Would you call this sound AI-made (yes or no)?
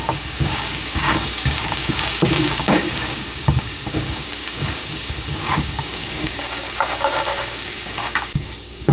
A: yes